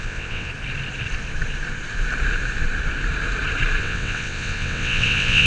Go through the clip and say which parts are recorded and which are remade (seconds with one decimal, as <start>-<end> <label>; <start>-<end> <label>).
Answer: 0.0-0.5 remade; 0.5-3.8 recorded; 3.8-5.5 remade